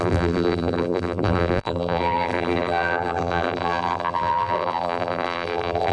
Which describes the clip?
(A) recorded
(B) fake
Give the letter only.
B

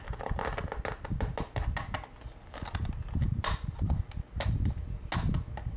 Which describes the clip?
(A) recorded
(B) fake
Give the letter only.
A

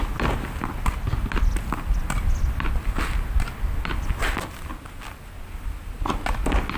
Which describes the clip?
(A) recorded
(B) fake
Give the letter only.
A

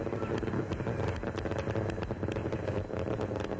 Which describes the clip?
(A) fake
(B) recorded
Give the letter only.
B